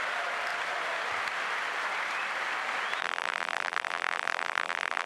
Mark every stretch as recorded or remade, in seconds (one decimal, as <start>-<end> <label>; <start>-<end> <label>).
0.0-3.0 recorded; 3.0-5.1 remade